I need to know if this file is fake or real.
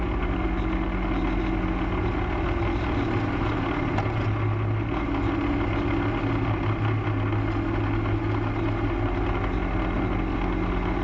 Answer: real